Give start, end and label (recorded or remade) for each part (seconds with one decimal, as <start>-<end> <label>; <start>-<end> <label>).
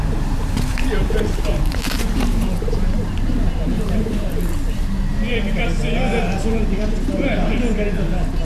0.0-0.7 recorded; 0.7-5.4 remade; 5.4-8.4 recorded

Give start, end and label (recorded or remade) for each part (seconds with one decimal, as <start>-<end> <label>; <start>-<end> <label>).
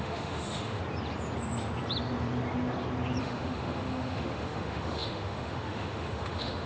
0.0-0.8 remade; 0.8-3.2 recorded; 3.2-6.7 remade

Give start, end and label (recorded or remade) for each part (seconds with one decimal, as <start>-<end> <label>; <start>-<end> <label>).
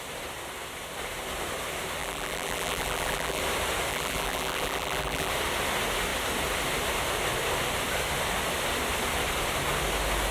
0.0-2.0 recorded; 2.0-3.4 remade; 3.4-3.9 recorded; 3.9-5.3 remade; 5.3-10.3 recorded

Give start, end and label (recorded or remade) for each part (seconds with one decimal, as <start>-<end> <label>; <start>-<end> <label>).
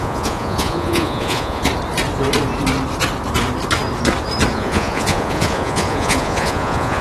0.0-1.7 remade; 1.7-4.5 recorded; 4.5-7.0 remade